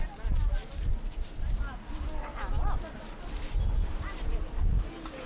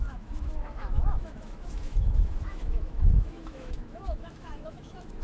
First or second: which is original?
first